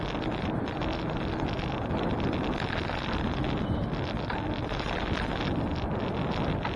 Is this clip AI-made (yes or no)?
no